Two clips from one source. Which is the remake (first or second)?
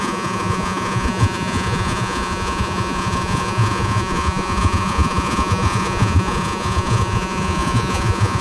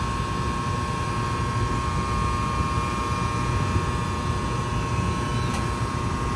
first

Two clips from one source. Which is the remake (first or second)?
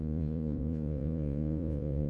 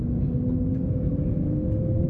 first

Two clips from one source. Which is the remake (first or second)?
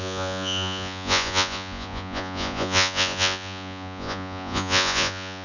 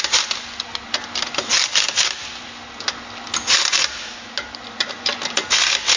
first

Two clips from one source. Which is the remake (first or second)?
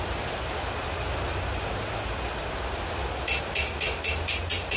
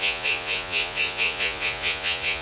second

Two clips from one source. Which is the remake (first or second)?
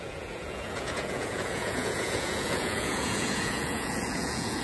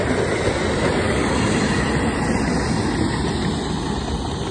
first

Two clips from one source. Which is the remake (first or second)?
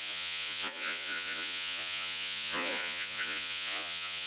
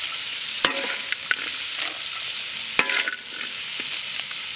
first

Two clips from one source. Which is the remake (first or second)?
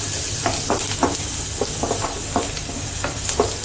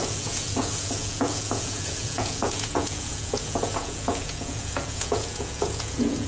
second